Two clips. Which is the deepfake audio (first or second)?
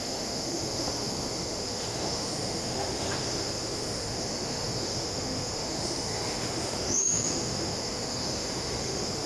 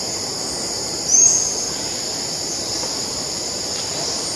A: first